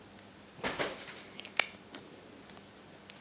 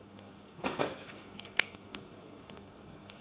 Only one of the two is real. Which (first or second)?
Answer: first